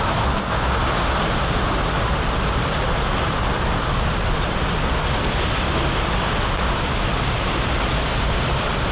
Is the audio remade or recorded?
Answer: recorded